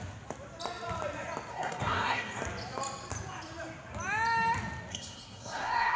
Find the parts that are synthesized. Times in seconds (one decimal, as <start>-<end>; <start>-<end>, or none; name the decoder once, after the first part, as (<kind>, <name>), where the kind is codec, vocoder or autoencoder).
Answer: 1.5-2.4 (codec, SNAC); 4.9-6.0